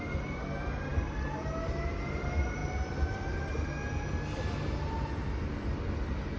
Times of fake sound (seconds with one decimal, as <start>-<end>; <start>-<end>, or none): none